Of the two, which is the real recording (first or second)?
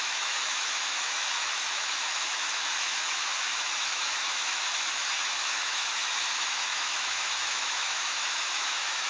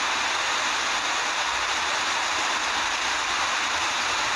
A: second